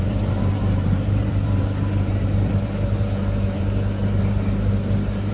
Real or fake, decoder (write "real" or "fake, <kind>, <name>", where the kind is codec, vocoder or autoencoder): fake, vocoder, BigVGAN v2